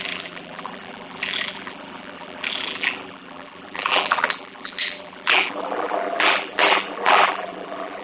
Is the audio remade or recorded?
remade